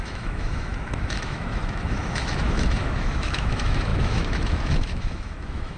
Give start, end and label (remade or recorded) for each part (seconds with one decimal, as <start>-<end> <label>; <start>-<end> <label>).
0.0-5.8 remade